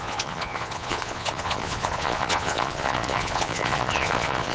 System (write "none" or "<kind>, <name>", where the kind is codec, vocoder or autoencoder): vocoder, Vocos